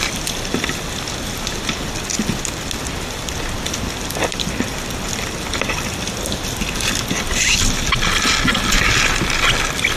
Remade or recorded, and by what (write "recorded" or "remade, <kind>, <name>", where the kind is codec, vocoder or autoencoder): recorded